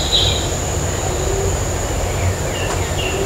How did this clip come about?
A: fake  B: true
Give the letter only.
B